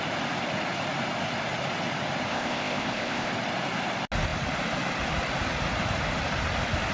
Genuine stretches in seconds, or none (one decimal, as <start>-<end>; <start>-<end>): 0.0-2.3; 3.3-6.9